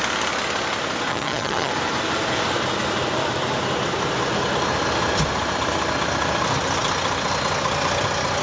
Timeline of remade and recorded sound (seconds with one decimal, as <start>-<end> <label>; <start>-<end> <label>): 0.0-1.1 recorded; 1.1-1.7 remade; 1.7-8.4 recorded